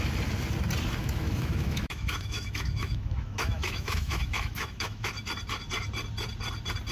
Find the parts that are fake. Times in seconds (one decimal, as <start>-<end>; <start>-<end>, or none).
1.0-5.1